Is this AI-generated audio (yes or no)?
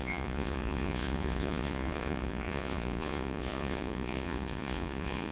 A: yes